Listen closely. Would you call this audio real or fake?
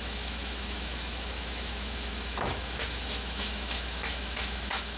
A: fake